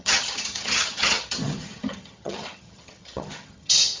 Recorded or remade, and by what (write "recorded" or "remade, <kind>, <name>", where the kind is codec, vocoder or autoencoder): remade, vocoder, HiFi-GAN